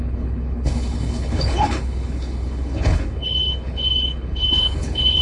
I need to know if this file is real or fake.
fake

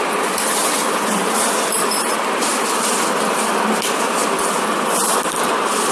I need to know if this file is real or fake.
real